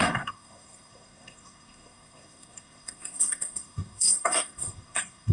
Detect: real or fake fake